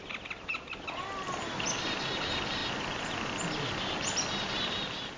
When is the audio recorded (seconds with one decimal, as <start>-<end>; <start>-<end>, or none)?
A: 0.0-5.2